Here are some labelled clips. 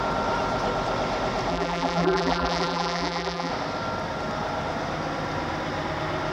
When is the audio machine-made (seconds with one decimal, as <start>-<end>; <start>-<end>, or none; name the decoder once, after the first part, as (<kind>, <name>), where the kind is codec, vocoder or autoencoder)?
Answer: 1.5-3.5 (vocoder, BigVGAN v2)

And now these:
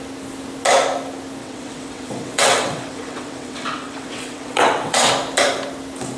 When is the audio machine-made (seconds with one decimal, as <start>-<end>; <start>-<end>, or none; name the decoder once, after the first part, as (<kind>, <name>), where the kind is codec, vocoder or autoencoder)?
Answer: 1.4-5.1 (vocoder, WaveNeXt)

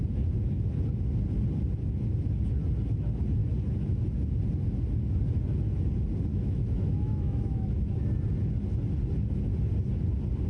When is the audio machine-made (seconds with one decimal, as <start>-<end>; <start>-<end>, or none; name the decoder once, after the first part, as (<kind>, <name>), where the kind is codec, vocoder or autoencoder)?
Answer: 6.3-7.7 (autoencoder, DAC-VAE)

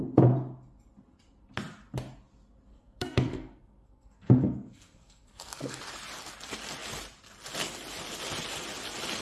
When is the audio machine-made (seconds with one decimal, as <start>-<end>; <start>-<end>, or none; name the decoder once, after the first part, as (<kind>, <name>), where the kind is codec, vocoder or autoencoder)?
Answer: 2.7-5.8 (codec, SNAC)

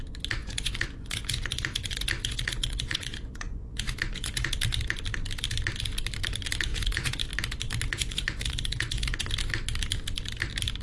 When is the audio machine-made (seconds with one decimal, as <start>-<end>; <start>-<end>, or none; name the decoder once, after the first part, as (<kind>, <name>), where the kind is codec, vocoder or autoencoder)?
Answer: 0.4-4.5 (vocoder, Vocos); 6.7-7.2; 7.9-9.3